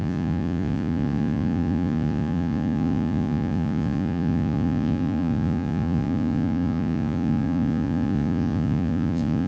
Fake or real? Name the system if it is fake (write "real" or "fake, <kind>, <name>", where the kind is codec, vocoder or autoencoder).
fake, vocoder, Vocos